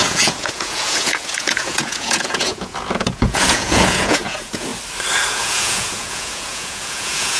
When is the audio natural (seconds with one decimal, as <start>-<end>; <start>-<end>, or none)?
4.7-5.3

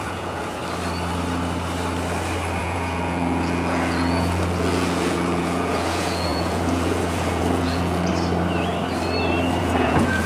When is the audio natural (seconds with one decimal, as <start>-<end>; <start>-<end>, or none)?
0.6-2.6; 8.1-9.6

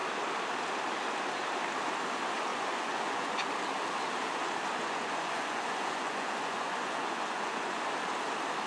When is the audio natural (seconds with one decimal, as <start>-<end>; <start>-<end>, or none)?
0.0-2.5; 3.5-4.8; 7.8-8.7

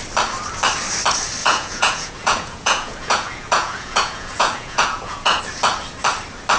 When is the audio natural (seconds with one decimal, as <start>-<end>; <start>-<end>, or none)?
0.0-1.4; 5.4-6.6

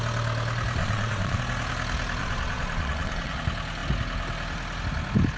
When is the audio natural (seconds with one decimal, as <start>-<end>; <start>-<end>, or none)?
0.0-0.8; 1.4-2.2; 3.4-5.4